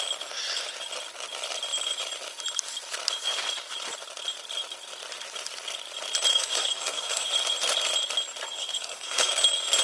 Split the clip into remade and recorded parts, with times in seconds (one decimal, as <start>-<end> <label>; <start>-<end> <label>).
0.0-6.3 recorded; 6.3-7.3 remade; 7.3-8.6 recorded; 8.6-9.3 remade; 9.3-9.8 recorded